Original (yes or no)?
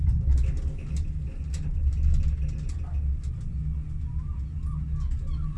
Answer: yes